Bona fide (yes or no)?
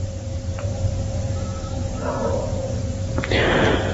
no